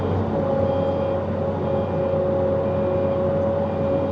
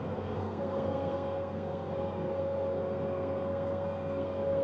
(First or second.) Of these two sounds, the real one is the first